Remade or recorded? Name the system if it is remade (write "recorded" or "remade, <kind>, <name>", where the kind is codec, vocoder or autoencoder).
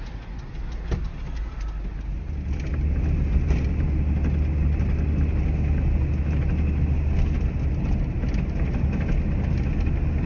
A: recorded